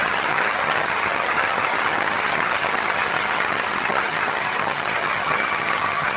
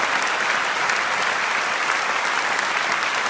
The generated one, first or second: first